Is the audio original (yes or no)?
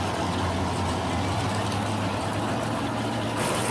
yes